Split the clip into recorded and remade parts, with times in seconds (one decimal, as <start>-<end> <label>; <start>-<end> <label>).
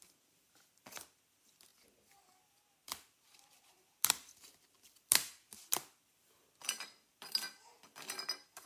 0.0-8.7 recorded